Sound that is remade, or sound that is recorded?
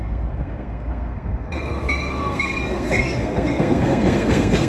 remade